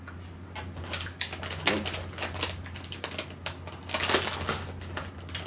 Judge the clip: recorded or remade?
recorded